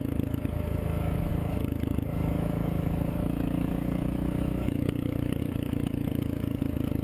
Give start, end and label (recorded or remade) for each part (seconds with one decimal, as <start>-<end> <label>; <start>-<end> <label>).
0.0-7.0 remade